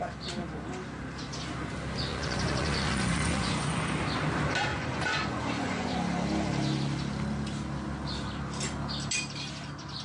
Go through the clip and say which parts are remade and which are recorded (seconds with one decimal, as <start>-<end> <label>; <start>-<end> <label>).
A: 0.0-2.1 recorded; 2.1-3.8 remade; 3.8-4.7 recorded; 4.7-5.9 remade; 5.9-10.0 recorded